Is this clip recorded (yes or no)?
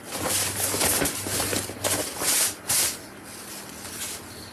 yes